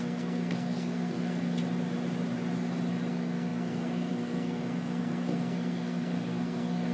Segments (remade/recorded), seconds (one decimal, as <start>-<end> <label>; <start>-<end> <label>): 0.0-1.6 remade; 1.6-3.1 recorded; 3.1-6.9 remade